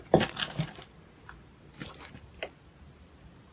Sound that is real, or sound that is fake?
real